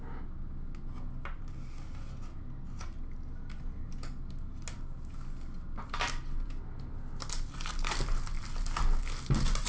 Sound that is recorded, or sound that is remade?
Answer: recorded